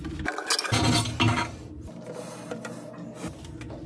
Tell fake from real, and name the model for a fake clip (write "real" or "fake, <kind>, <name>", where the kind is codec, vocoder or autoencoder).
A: real